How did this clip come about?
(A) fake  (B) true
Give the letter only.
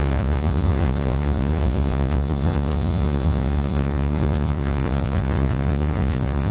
A